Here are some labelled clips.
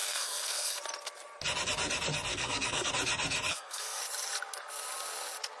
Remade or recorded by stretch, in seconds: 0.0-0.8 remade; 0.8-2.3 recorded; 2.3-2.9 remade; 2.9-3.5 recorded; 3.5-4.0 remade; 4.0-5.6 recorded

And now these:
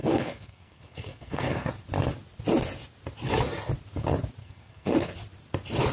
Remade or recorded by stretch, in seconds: 0.0-1.7 remade; 1.7-4.4 recorded; 4.4-5.1 remade; 5.1-5.9 recorded

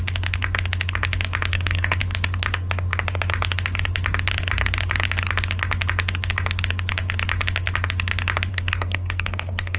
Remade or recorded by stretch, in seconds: 0.0-1.5 recorded; 1.5-2.0 remade; 2.0-8.5 recorded; 8.5-9.8 remade

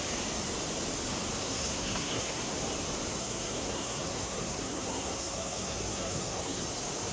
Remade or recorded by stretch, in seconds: 0.0-1.4 recorded; 1.4-2.5 remade; 2.5-3.2 recorded; 3.2-6.6 remade; 6.6-7.1 recorded

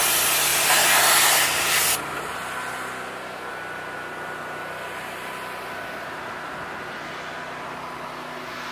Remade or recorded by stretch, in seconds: 0.0-8.7 recorded

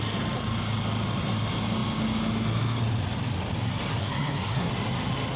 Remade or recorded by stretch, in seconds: 0.0-4.0 recorded; 4.0-4.7 remade; 4.7-5.4 recorded